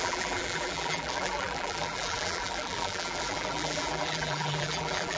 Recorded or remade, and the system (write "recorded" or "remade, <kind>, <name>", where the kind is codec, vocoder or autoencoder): remade, vocoder, BigVGAN v2